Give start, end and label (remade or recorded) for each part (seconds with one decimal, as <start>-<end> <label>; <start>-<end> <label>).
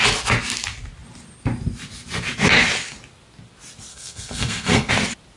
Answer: 0.0-3.9 recorded; 3.9-4.9 remade; 4.9-5.4 recorded